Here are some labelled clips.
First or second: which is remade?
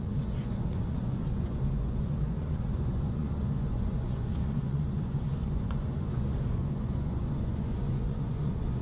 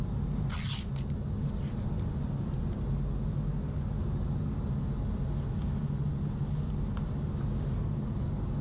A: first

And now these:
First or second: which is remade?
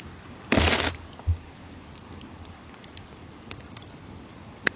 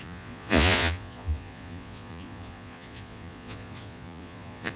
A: second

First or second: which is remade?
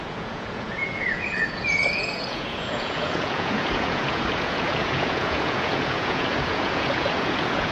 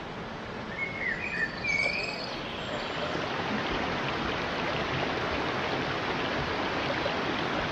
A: first